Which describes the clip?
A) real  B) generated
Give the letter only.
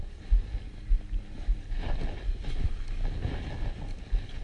A